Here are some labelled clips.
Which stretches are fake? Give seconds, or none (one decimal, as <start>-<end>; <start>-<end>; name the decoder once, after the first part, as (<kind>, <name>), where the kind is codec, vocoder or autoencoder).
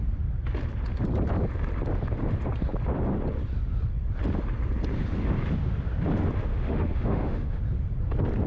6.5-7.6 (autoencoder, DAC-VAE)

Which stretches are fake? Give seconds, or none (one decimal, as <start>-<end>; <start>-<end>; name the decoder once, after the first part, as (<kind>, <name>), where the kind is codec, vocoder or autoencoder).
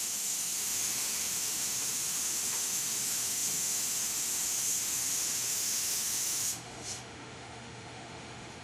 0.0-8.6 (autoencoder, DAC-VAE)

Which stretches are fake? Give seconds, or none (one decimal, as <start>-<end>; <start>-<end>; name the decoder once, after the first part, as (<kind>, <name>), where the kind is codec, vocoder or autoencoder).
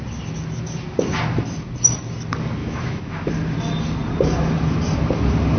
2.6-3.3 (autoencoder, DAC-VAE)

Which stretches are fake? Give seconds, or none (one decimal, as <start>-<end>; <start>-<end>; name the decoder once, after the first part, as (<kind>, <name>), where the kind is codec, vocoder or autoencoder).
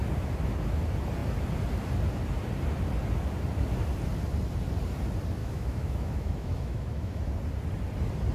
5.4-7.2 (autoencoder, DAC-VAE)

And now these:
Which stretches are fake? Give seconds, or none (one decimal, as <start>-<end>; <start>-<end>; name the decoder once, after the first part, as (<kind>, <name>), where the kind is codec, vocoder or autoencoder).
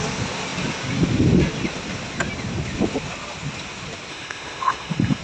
4.1-5.2 (autoencoder, DAC-VAE)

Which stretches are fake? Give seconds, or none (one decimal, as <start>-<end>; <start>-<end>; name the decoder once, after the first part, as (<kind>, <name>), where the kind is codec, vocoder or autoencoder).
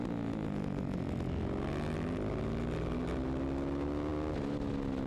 none